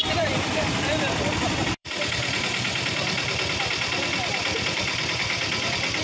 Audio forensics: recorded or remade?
remade